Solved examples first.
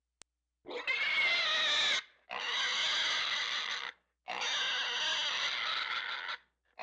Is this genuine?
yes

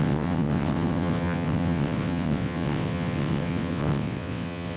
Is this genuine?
no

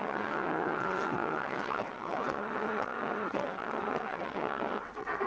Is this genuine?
no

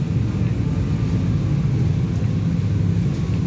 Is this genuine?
yes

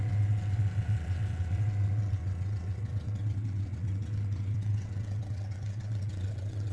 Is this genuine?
no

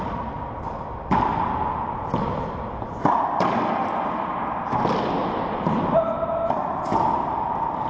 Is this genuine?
yes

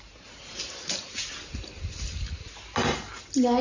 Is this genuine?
yes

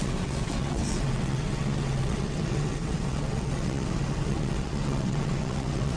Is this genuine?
no